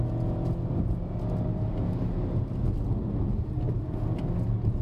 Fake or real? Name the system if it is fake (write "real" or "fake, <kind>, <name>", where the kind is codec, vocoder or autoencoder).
real